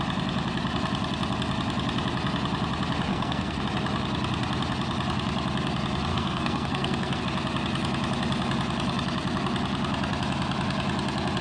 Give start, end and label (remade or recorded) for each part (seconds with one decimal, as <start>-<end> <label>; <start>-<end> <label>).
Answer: 0.0-3.1 recorded; 3.1-3.6 remade; 3.6-6.1 recorded; 6.1-7.2 remade; 7.2-11.4 recorded